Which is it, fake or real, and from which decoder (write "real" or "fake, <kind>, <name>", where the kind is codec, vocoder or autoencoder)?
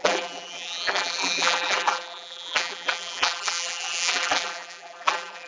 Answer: fake, vocoder, BigVGAN v2